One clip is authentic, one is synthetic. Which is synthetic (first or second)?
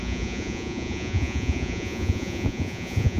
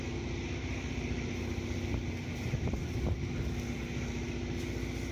first